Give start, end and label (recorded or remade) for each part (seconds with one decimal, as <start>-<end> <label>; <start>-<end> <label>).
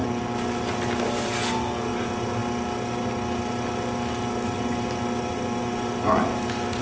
0.0-6.8 recorded